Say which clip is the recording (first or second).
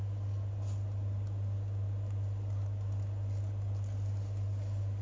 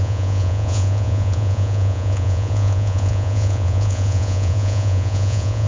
first